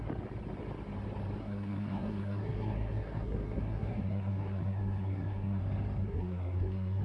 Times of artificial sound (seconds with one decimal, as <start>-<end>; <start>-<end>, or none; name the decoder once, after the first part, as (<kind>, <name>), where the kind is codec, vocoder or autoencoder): 1.4-5.6 (codec, SNAC); 6.0-7.0